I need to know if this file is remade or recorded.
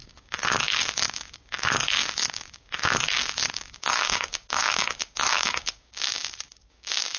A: remade